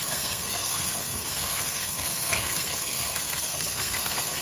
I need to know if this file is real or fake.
fake